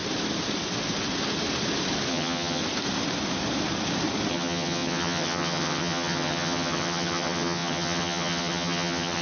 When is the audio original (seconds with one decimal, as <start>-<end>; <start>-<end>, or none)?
0.0-2.1; 2.6-4.3